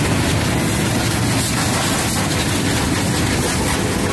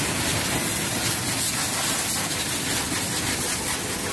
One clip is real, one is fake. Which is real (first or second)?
first